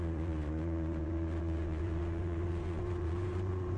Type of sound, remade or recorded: remade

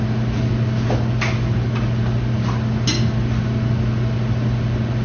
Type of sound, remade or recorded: recorded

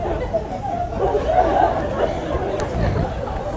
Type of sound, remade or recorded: recorded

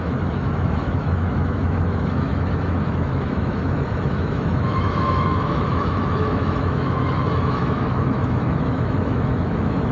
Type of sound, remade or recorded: remade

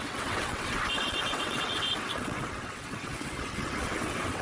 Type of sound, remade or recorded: remade